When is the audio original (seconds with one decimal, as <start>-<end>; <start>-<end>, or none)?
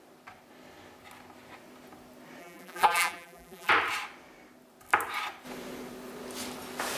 0.0-2.4; 3.7-7.0